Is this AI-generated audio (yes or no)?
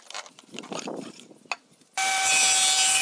no